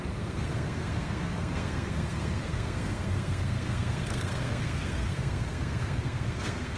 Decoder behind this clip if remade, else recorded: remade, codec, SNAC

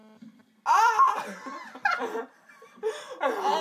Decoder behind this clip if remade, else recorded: recorded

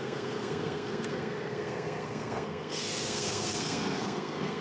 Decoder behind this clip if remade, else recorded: remade, codec, SNAC